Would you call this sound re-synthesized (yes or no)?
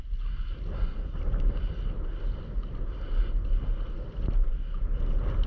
no